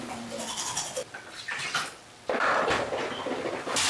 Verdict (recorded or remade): remade